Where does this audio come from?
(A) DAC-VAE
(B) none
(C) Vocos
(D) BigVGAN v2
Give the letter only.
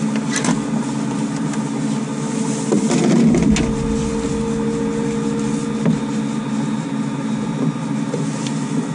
B